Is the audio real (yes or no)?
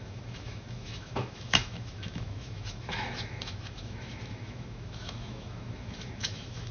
no